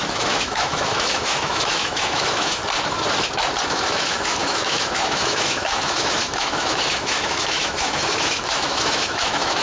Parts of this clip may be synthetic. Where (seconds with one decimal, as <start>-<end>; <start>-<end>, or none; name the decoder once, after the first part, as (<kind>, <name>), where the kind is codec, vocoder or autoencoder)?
0.0-2.6 (autoencoder, DAC-VAE); 3.7-9.6